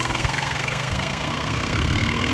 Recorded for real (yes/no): no